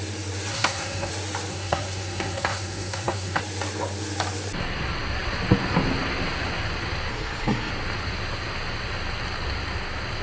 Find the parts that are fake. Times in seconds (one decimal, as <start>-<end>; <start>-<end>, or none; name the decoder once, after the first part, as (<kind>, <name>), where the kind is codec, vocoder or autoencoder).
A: 0.5-1.1 (codec, SNAC); 1.5-3.4; 7.1-7.7